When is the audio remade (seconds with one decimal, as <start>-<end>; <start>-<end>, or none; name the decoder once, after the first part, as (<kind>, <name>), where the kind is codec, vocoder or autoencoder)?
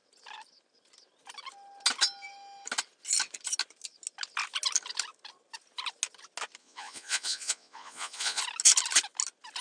6.6-8.4 (vocoder, Vocos)